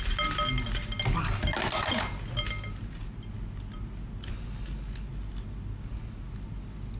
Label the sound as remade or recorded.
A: recorded